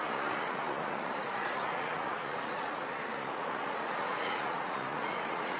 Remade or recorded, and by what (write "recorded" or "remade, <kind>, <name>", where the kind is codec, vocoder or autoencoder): remade, vocoder, Vocos